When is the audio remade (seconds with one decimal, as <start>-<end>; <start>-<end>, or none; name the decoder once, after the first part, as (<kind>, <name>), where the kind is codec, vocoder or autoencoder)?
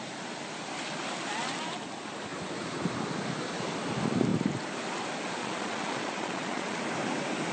5.4-6.8 (vocoder, Vocos)